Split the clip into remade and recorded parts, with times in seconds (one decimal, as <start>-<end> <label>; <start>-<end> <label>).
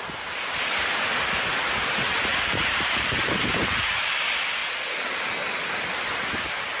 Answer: 0.0-2.3 recorded; 2.3-4.1 remade; 4.1-6.8 recorded